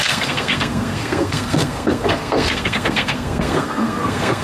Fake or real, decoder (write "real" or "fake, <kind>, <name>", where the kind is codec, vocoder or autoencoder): fake, codec, SNAC